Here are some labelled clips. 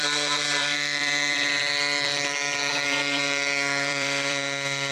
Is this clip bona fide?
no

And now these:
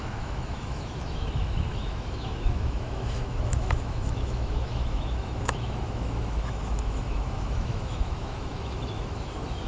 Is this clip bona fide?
no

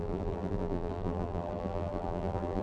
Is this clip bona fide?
no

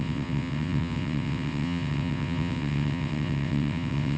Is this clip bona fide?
no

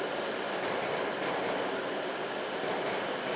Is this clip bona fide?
yes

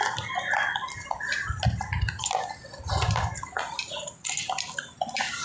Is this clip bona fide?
yes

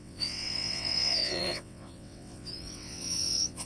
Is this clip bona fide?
no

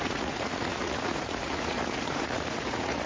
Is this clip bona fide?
no